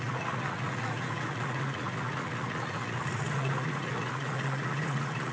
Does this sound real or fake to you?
fake